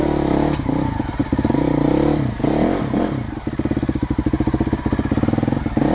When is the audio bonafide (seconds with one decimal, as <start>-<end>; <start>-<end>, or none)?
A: 0.0-5.9